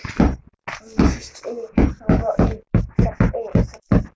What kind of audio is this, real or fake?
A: real